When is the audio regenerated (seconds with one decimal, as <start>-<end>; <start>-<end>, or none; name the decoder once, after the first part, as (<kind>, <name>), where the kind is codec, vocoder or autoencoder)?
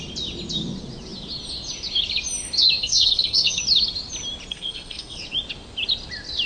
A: 2.8-3.6 (codec, SNAC); 4.5-5.2